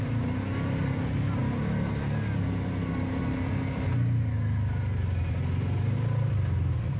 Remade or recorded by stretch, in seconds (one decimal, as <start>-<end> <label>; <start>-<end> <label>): 0.0-7.0 recorded